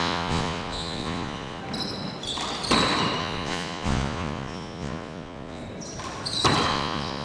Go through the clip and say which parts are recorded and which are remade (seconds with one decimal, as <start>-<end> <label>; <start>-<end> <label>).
0.0-1.6 remade; 1.6-3.2 recorded; 3.2-5.6 remade; 5.6-6.7 recorded; 6.7-7.2 remade